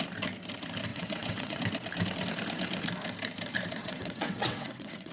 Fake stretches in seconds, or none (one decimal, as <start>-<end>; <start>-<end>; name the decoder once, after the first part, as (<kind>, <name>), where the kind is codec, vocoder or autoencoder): 0.9-1.6 (vocoder, WaveNeXt); 3.8-5.1